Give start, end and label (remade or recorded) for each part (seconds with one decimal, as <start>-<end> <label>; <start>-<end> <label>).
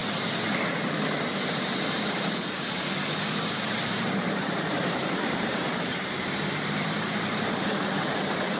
0.0-2.7 recorded; 2.7-8.6 remade